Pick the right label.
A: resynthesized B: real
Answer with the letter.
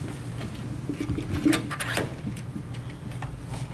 B